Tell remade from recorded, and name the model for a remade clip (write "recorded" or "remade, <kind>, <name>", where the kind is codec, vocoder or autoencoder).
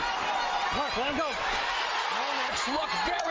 recorded